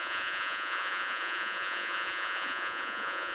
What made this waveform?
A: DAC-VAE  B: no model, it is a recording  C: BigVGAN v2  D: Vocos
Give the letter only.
D